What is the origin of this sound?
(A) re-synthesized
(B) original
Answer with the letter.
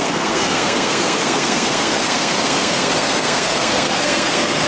A